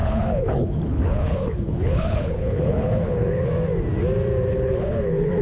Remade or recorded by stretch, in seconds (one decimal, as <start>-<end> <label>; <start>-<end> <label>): 0.0-3.5 remade; 3.5-4.5 recorded; 4.5-5.4 remade